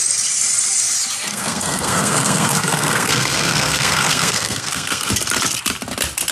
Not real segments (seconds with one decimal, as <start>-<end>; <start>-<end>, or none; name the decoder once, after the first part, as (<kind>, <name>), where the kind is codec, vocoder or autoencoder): 1.3-5.1 (codec, SNAC)